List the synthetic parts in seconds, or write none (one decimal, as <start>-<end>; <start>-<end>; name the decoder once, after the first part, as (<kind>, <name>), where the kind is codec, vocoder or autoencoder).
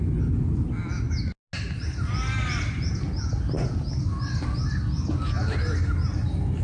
none